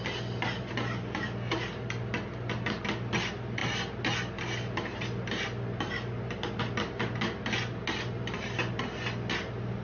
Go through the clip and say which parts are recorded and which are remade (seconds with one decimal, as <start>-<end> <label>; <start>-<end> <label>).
0.0-9.8 recorded

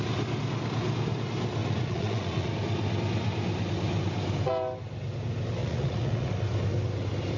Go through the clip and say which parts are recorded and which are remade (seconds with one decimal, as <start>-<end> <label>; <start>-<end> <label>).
0.0-1.6 recorded; 1.6-2.5 remade; 2.5-5.6 recorded; 5.6-6.3 remade; 6.3-7.4 recorded

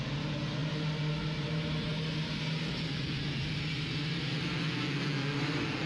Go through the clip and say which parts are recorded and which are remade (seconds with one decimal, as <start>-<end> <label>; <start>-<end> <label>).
0.0-5.9 recorded

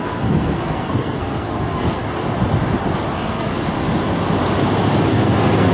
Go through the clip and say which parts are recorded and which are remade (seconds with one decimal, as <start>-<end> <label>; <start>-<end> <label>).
0.0-2.1 remade; 2.1-3.1 recorded; 3.1-3.5 remade; 3.5-5.1 recorded; 5.1-5.7 remade

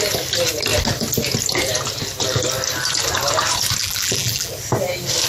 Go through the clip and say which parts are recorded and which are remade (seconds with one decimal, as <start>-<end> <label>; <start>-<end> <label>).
0.0-3.8 recorded; 3.8-4.5 remade; 4.5-5.3 recorded

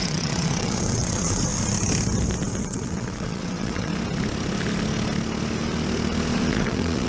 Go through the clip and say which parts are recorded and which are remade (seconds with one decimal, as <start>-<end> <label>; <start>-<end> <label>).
0.0-1.5 remade; 1.5-2.6 recorded; 2.6-3.9 remade; 3.9-6.5 recorded; 6.5-7.1 remade

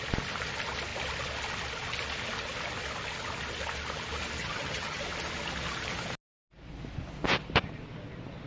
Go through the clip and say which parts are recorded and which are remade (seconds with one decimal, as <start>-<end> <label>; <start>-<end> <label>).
0.0-4.4 recorded; 4.4-5.0 remade; 5.0-8.5 recorded

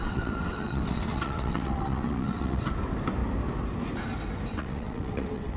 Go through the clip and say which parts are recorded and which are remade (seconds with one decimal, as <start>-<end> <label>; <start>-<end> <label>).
0.0-2.7 remade; 2.7-4.5 recorded; 4.5-5.6 remade